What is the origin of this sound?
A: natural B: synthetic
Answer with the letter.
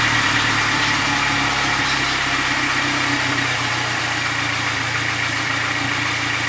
B